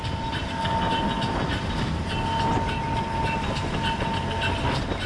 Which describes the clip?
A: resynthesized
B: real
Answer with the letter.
B